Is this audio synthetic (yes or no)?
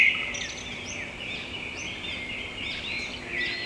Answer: no